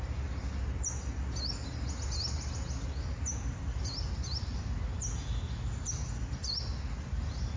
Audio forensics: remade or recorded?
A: recorded